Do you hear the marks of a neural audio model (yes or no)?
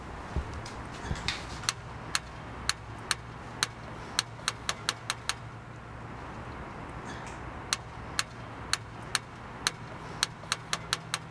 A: no